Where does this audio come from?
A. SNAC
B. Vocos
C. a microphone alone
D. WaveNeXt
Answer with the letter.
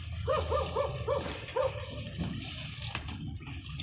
C